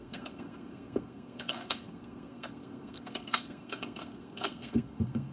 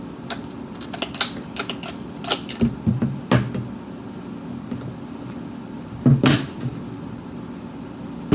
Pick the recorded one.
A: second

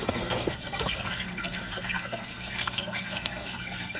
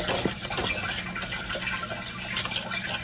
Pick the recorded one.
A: second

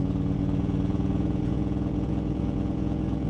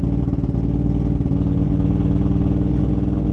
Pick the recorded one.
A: second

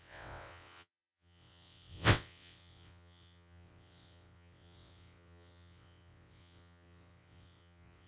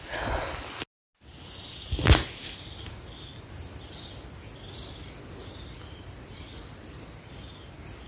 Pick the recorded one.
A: second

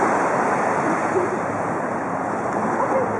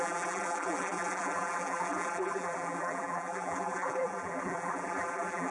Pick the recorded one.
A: first